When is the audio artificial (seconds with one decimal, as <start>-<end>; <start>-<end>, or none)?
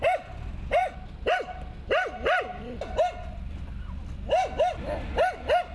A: none